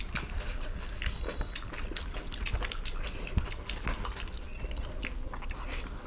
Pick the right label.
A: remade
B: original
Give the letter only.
B